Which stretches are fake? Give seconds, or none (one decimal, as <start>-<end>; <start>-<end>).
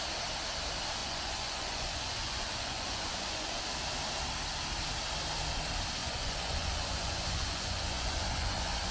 1.0-3.6; 6.0-8.9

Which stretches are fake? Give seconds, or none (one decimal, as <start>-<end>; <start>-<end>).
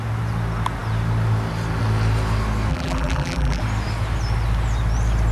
2.7-3.6